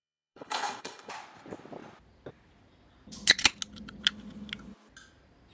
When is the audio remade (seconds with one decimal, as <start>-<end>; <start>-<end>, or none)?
0.0-1.1